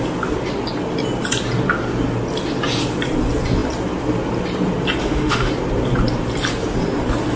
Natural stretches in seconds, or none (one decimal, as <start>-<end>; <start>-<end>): 0.0-5.0; 5.5-7.4